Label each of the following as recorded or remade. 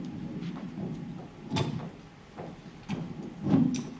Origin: recorded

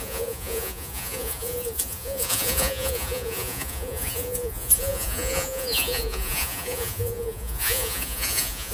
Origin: remade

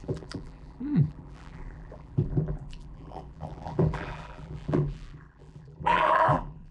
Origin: remade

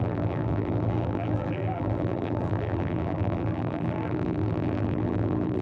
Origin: remade